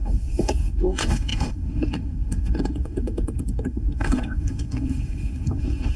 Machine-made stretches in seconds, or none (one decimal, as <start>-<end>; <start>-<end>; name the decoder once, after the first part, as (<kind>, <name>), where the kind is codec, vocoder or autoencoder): 0.0-6.0 (codec, SNAC)